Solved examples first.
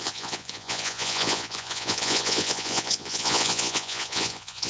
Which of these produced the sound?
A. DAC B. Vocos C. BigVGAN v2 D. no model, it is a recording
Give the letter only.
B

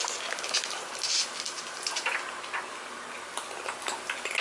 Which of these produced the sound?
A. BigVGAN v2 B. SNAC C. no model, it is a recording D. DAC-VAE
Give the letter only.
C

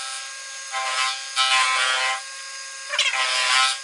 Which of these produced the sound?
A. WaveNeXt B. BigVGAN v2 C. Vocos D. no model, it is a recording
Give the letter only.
D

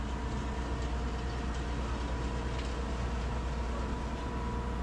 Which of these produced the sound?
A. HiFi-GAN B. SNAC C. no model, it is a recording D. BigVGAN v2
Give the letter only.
C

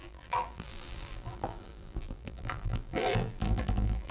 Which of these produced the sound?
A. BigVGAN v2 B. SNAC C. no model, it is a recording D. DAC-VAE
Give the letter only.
A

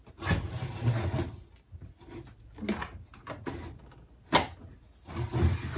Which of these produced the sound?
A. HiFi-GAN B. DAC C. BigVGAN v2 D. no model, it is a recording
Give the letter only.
D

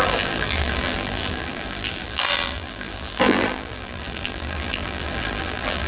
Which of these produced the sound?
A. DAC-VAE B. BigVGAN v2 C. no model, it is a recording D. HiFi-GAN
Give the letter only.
B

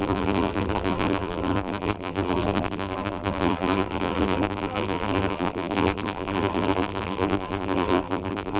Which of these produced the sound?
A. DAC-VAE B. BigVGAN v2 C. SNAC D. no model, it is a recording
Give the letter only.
B